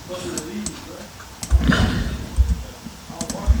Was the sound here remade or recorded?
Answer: recorded